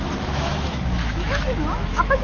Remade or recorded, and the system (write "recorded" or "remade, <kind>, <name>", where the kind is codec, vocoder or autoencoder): remade, autoencoder, DAC-VAE